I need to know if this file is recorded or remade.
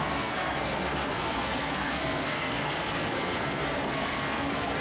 remade